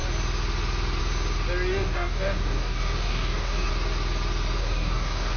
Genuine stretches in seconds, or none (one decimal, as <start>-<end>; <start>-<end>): 0.0-1.7; 3.7-4.6